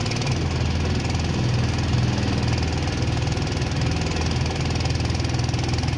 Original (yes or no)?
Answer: yes